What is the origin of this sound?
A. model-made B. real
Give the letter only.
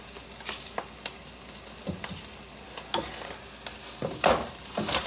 B